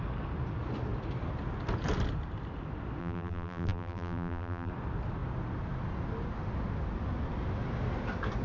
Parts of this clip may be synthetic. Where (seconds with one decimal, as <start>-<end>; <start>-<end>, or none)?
3.0-4.7